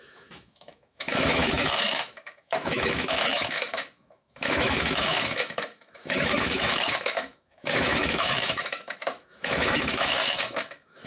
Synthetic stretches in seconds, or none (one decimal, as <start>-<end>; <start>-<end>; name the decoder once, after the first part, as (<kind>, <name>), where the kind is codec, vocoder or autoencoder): 0.0-11.1 (autoencoder, DAC-VAE)